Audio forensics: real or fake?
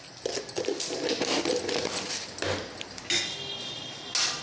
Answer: real